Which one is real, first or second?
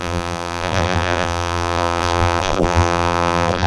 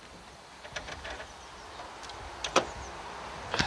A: second